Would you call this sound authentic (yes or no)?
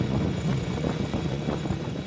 no